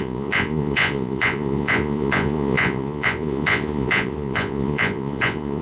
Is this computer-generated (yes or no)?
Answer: yes